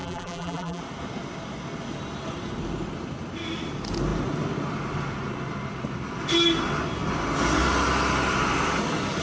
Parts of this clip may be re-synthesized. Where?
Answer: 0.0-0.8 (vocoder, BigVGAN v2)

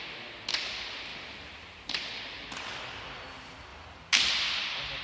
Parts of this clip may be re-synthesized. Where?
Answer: 1.1-2.1 (vocoder, BigVGAN v2); 3.7-4.3

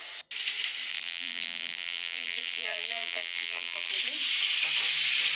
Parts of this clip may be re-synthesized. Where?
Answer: 0.9-3.9 (vocoder, BigVGAN v2)

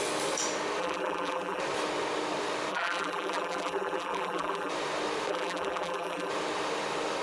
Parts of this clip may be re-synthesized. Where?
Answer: 0.8-1.6 (vocoder, BigVGAN v2); 2.7-4.7; 5.3-6.3

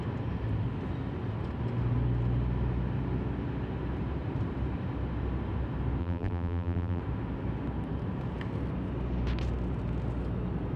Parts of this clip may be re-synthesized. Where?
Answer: 6.0-7.0 (vocoder, BigVGAN v2)

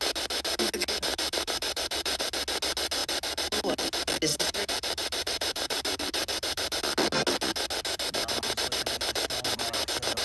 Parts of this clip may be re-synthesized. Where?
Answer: 1.1-2.2 (vocoder, BigVGAN v2); 3.0-3.6; 4.3-6.8